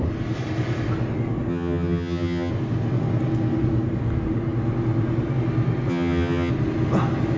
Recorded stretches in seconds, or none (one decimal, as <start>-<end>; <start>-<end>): 0.0-1.5; 2.5-5.9; 6.5-7.4

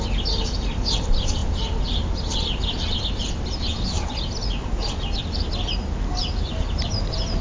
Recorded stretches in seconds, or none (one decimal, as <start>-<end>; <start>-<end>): 0.0-7.4

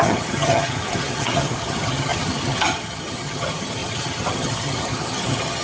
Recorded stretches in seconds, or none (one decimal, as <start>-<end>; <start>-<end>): none

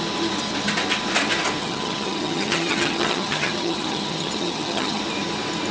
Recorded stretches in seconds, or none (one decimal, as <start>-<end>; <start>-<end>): 0.0-1.6; 5.0-5.7

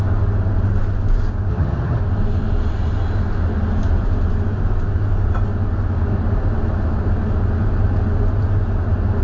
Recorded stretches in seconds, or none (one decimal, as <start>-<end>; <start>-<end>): 0.0-1.5; 2.0-9.2

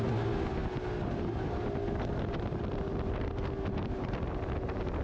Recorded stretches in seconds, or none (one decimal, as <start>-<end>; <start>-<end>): 0.0-5.0